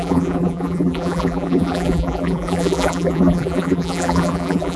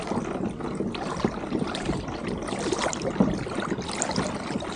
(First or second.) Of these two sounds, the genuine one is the second